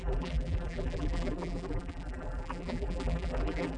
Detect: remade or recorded remade